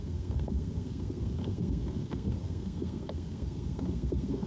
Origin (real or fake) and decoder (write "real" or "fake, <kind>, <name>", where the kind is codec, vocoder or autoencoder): fake, codec, SNAC